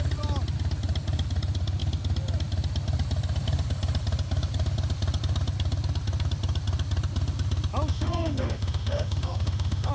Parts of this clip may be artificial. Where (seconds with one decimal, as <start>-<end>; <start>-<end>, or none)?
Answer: 7.9-9.9